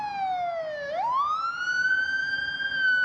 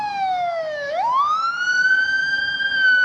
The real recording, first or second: first